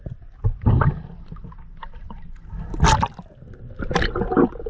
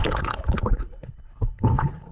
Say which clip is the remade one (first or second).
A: second